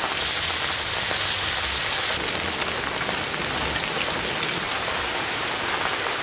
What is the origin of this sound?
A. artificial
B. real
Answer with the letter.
B